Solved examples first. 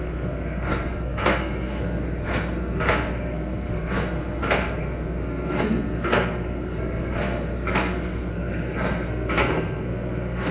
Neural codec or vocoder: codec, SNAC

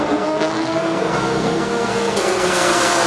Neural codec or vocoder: codec, SNAC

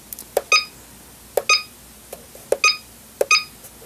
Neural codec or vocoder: none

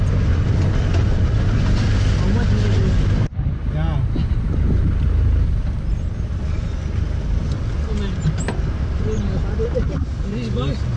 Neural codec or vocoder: none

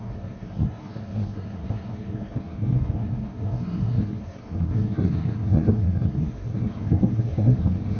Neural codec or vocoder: codec, SNAC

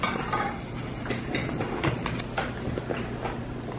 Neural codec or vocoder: none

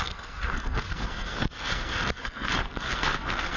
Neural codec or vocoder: codec, SNAC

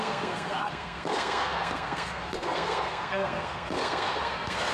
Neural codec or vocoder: codec, SNAC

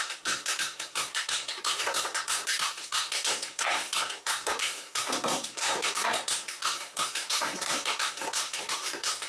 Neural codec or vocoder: codec, SNAC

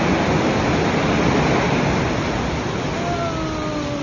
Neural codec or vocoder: none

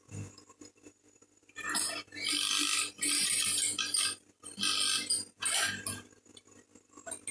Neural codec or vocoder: none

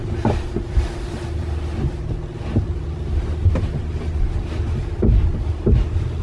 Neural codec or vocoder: none